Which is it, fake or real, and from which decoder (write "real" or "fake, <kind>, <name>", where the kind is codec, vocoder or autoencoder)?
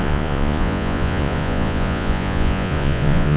fake, vocoder, Vocos